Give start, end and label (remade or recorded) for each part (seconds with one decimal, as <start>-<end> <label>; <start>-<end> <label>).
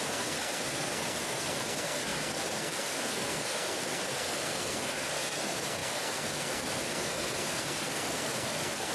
0.0-8.9 remade